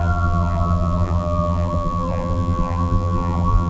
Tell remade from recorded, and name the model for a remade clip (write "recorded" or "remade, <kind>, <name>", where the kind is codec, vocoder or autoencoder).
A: remade, vocoder, BigVGAN v2